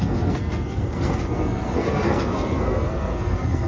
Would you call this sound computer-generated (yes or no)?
yes